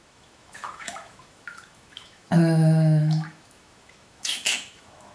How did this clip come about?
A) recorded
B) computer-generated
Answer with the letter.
B